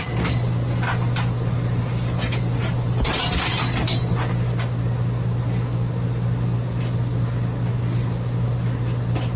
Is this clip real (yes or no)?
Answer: yes